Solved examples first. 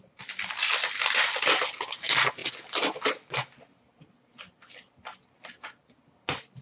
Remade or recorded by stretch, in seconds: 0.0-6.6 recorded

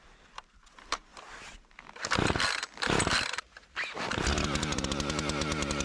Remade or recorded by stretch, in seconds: 0.0-5.8 recorded

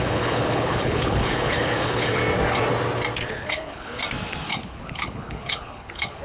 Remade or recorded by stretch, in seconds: 0.0-2.2 remade; 2.2-3.3 recorded; 3.3-4.0 remade; 4.0-4.5 recorded; 4.5-6.2 remade

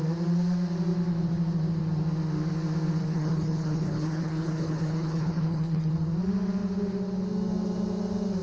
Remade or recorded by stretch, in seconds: 0.0-3.0 recorded; 3.0-5.9 remade; 5.9-8.4 recorded